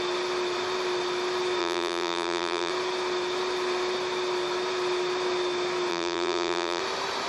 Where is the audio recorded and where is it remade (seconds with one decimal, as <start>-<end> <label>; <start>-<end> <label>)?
0.0-1.6 recorded; 1.6-2.7 remade; 2.7-5.9 recorded; 5.9-6.8 remade; 6.8-7.3 recorded